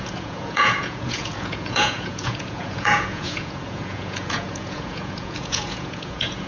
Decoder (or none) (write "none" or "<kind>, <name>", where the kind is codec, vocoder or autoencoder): vocoder, Vocos